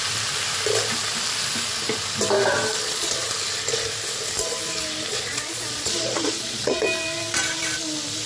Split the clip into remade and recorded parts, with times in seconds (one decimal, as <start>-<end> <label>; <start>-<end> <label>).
0.0-2.8 recorded; 2.8-3.3 remade; 3.3-5.1 recorded; 5.1-6.8 remade; 6.8-8.3 recorded